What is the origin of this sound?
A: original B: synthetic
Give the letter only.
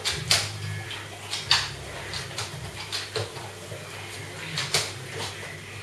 A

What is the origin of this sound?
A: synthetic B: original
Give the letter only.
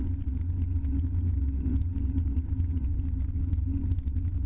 B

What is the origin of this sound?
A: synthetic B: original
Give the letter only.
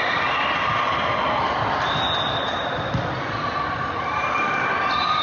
B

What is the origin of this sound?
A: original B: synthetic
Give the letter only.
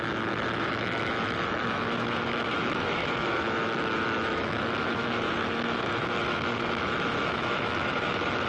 B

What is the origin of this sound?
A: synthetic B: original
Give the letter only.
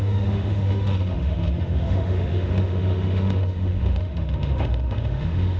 A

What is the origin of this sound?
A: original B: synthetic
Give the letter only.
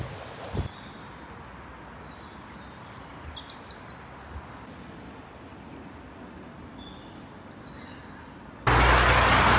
A